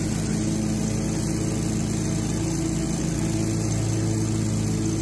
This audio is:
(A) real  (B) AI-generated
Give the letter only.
A